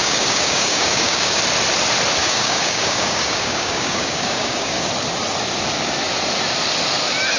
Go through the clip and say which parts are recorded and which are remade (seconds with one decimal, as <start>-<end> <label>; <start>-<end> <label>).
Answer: 0.0-1.4 remade; 1.4-2.2 recorded; 2.2-4.9 remade; 4.9-7.4 recorded